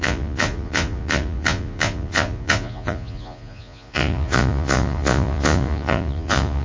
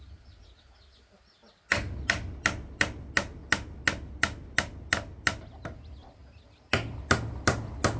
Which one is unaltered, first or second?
second